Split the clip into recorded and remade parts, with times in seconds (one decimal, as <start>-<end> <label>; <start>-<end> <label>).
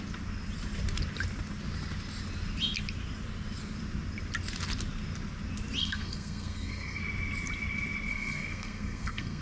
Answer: 0.0-5.8 recorded; 5.8-7.0 remade; 7.0-8.1 recorded; 8.1-9.4 remade